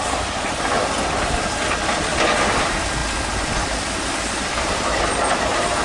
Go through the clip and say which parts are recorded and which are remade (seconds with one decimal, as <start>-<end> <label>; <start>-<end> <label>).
0.0-5.8 recorded